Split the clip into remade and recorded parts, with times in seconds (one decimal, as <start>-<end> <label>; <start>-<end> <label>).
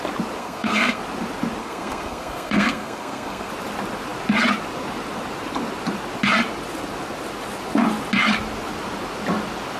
0.0-0.4 recorded; 0.4-1.0 remade; 1.0-1.6 recorded; 1.6-3.5 remade; 3.5-9.8 recorded